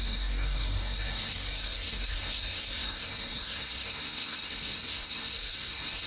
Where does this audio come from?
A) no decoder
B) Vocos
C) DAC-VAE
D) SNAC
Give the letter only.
D